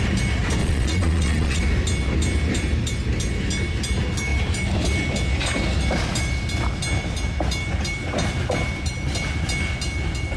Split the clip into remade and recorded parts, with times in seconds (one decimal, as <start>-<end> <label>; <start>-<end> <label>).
0.0-0.6 recorded; 0.6-1.6 remade; 1.6-10.4 recorded